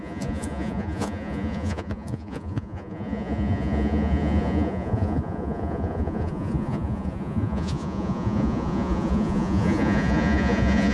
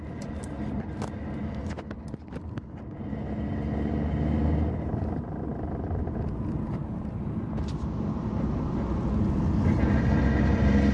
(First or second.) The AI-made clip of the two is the first